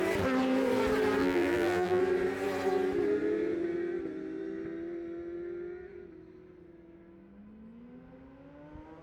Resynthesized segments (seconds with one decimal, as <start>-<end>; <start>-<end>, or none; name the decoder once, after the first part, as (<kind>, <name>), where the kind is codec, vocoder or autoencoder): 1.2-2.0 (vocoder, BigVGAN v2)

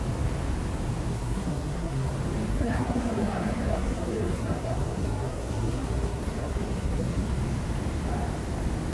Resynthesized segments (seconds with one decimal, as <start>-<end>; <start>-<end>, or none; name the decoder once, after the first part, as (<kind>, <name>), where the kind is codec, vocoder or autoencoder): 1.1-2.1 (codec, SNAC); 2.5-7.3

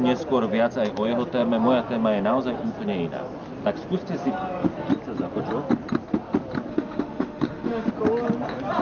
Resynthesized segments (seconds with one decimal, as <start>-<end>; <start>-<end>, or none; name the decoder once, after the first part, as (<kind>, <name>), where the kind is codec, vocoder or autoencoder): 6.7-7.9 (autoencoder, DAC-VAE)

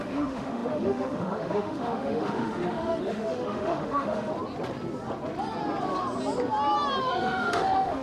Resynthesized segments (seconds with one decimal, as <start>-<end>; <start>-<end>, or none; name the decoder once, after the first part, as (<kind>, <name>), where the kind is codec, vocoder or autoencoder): 0.0-4.3 (autoencoder, DAC-VAE); 7.0-8.0

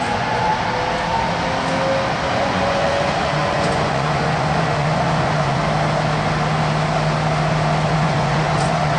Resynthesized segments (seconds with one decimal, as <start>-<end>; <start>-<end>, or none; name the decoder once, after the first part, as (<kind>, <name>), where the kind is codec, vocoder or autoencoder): 0.0-0.5 (vocoder, Vocos); 2.3-5.6; 7.9-9.0

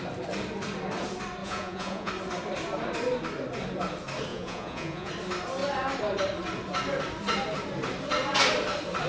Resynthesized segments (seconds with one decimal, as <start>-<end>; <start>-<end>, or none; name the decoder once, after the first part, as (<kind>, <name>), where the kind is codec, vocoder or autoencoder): 1.4-2.1 (vocoder, Vocos); 4.3-5.1

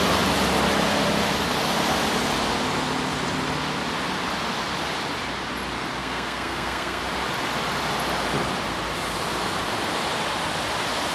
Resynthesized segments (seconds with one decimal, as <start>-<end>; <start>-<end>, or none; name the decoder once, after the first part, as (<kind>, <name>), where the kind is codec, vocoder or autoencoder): 6.0-7.0 (codec, SNAC)